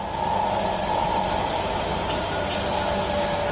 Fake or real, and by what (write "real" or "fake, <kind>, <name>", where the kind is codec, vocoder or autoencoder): real